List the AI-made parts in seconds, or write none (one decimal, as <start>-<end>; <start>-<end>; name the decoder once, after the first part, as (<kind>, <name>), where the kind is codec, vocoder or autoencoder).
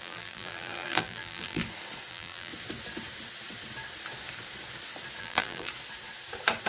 0.0-1.6 (vocoder, BigVGAN v2); 2.1-2.5; 5.2-5.7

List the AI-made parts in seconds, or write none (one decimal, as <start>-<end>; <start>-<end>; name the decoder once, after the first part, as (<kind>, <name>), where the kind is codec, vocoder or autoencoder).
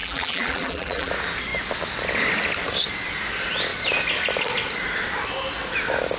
0.0-1.1 (vocoder, BigVGAN v2)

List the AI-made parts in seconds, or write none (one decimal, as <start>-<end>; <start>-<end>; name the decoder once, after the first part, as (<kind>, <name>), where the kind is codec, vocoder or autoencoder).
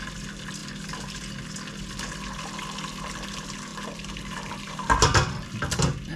3.7-5.5 (vocoder, BigVGAN v2)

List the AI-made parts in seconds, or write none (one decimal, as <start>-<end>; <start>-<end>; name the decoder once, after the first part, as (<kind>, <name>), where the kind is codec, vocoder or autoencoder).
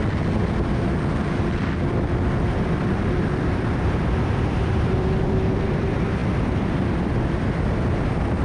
1.4-8.4 (vocoder, BigVGAN v2)